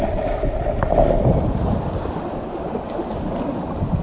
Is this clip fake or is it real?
real